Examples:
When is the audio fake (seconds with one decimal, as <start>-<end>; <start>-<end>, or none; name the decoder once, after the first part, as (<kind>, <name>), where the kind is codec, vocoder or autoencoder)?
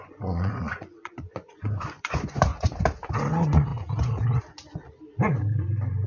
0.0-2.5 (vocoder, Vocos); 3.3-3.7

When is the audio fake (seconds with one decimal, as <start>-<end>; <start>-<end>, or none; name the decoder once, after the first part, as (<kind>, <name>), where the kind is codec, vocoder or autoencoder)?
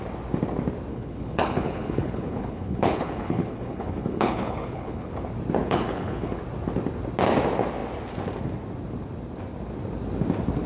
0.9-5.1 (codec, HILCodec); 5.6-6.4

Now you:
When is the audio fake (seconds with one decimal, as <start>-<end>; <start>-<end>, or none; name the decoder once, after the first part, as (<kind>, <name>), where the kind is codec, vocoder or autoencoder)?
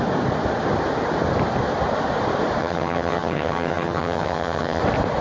2.6-4.8 (vocoder, HiFi-GAN)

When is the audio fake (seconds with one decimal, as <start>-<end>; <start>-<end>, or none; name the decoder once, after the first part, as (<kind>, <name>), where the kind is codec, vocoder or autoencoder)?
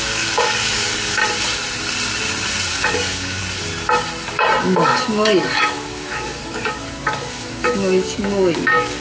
0.0-1.2 (codec, DAC); 2.7-3.4; 4.6-9.0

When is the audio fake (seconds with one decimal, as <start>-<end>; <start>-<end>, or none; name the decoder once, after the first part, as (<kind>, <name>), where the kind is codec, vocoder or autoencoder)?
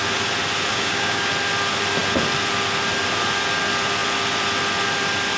0.7-1.3 (codec, DAC)